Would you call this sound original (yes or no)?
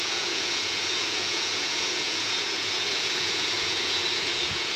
no